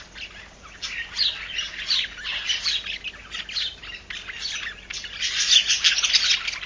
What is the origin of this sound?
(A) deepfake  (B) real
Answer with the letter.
B